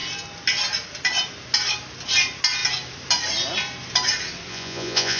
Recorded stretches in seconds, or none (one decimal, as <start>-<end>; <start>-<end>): 0.0-4.5

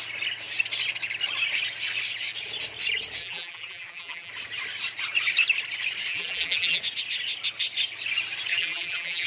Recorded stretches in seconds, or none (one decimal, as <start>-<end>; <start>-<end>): 0.0-3.2; 4.3-6.1; 6.8-8.5

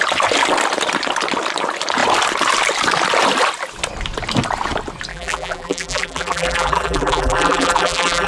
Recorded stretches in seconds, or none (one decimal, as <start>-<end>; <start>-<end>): 0.0-5.1

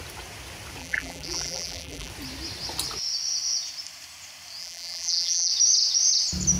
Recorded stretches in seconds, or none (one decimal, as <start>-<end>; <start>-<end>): 0.0-0.8; 2.1-4.6; 5.5-6.6

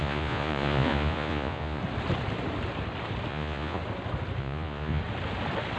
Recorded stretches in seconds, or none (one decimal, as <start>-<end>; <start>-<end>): 1.8-3.3; 3.8-4.4; 5.0-5.8

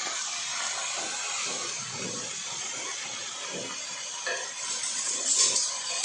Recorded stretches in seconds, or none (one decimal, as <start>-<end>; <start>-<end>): 0.5-1.4; 2.4-6.0